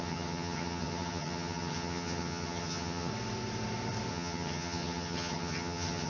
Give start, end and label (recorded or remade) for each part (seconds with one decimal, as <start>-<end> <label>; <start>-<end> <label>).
0.0-3.1 remade; 3.1-4.1 recorded; 4.1-6.1 remade